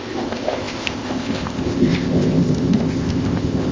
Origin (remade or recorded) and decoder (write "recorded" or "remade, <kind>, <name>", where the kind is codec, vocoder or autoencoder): remade, codec, ZipCodec